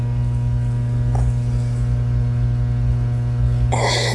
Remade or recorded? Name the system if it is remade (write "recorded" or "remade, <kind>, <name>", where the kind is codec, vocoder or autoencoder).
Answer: recorded